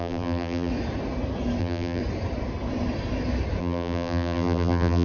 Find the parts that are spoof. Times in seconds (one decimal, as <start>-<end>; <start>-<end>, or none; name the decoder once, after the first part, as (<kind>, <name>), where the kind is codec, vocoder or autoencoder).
0.0-0.7 (vocoder, BigVGAN v2); 1.6-2.0; 3.6-5.0